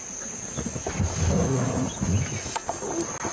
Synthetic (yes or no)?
no